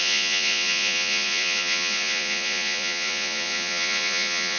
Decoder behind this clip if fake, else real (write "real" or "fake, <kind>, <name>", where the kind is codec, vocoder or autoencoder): fake, vocoder, Vocos